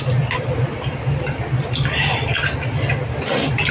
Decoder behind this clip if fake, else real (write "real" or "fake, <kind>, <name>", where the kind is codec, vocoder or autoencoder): real